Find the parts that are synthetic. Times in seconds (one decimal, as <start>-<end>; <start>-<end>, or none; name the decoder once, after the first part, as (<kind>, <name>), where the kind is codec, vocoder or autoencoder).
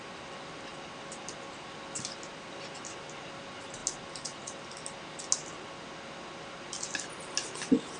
none